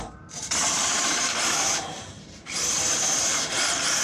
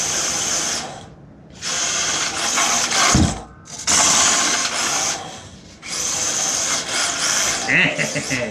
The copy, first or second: first